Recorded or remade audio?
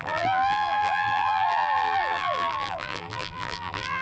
remade